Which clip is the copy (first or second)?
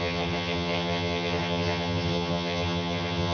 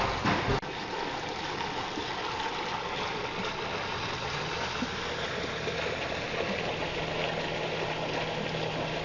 first